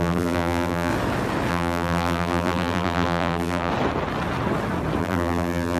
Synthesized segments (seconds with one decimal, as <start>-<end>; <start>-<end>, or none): 0.0-0.9; 1.5-3.7; 5.0-5.8